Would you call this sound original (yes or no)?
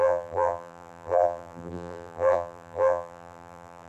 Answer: no